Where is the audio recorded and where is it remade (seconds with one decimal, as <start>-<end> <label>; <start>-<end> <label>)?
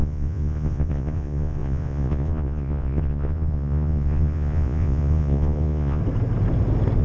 0.0-6.0 remade; 6.0-7.0 recorded